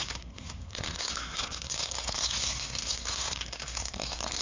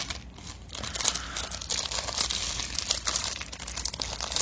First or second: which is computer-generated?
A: first